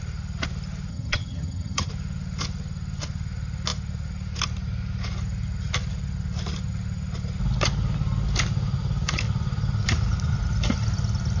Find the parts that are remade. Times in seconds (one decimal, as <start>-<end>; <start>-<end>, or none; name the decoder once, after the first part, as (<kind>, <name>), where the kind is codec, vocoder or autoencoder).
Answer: 0.9-1.9 (vocoder, HiFi-GAN)